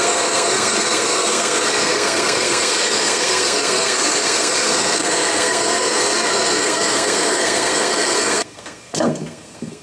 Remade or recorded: remade